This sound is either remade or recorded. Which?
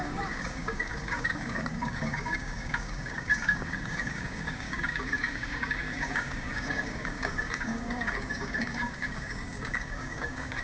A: remade